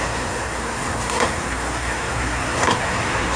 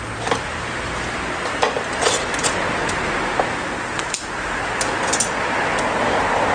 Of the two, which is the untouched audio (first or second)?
second